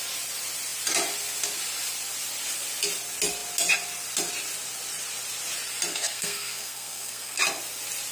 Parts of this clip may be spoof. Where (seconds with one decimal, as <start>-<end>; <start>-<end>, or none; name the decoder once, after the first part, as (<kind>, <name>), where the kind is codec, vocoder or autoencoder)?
5.9-7.4 (codec, SNAC)